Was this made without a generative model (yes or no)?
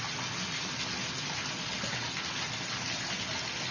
yes